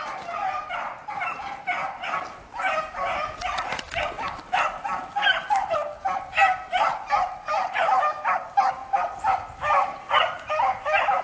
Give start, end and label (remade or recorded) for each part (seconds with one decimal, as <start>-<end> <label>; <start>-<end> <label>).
0.0-0.4 recorded; 0.4-1.1 remade; 1.1-8.8 recorded; 8.8-9.6 remade; 9.6-11.2 recorded